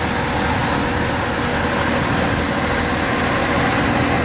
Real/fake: real